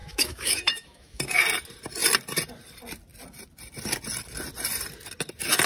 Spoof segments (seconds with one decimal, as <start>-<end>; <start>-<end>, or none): 0.0-1.2